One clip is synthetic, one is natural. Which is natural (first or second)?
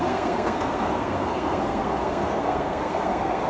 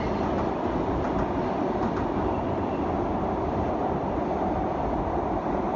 second